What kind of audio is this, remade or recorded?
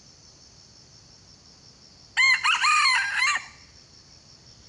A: recorded